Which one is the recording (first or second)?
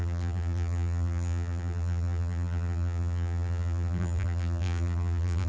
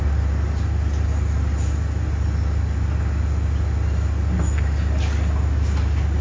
second